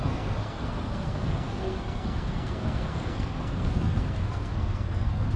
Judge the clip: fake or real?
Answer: fake